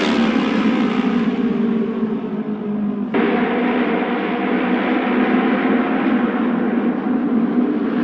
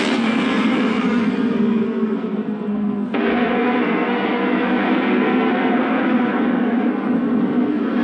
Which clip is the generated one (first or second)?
second